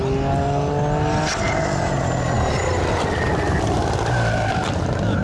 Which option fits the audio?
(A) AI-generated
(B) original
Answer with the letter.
B